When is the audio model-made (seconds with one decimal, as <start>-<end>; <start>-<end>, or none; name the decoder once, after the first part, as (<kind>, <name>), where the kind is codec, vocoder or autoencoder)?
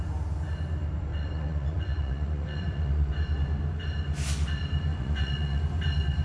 1.1-3.1 (vocoder, Vocos); 4.9-5.6